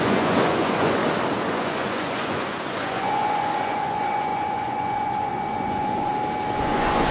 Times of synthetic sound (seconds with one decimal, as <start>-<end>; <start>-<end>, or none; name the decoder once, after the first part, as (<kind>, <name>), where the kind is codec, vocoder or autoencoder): 0.0-1.0 (vocoder, Vocos); 1.5-6.1; 6.6-7.1